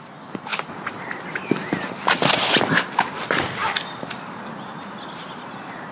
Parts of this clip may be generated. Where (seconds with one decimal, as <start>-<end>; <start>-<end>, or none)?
none